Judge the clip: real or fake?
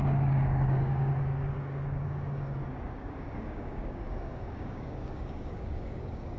fake